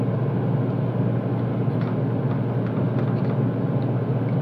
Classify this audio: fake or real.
real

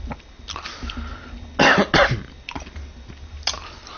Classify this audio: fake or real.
real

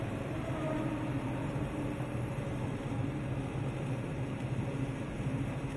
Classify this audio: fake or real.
fake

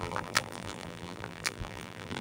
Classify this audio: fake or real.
fake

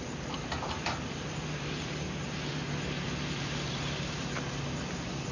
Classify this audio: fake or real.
fake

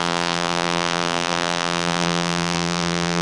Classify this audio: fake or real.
fake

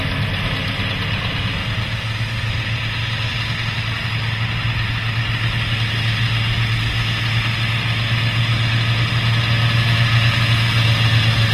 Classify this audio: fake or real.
real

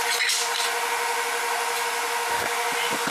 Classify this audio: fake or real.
real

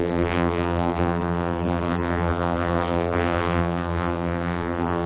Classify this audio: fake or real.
fake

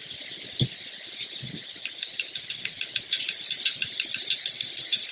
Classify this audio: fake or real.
real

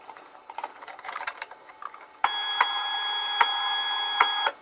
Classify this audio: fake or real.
fake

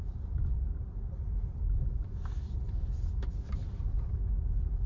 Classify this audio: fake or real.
real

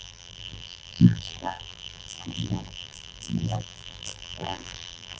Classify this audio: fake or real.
fake